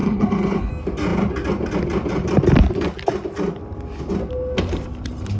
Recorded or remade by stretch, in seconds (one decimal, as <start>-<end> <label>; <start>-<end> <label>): 0.0-0.7 remade; 0.7-5.4 recorded